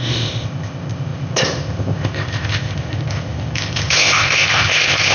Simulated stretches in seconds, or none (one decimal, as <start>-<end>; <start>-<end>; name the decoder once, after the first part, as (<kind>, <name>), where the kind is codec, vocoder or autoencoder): 0.0-5.1 (codec, ZipCodec)